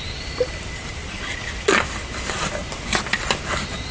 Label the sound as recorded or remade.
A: recorded